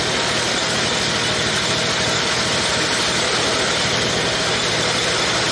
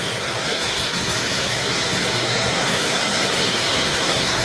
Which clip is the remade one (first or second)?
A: second